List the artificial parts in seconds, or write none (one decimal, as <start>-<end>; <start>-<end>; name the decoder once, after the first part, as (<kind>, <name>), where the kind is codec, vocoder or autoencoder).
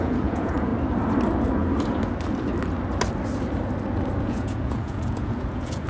0.0-0.7 (vocoder, Vocos); 4.2-5.9